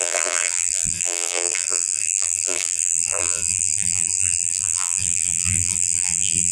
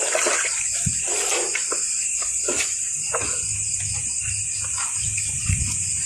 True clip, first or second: second